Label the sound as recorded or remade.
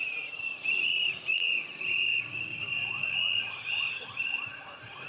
remade